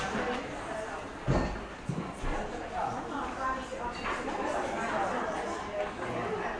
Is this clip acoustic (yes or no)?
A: yes